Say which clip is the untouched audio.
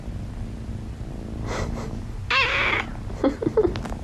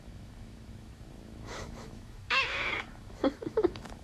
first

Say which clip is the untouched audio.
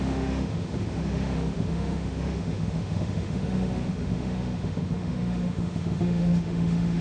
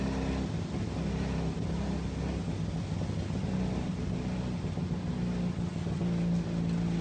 second